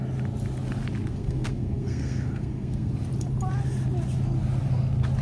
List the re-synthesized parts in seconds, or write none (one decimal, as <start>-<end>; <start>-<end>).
1.1-2.9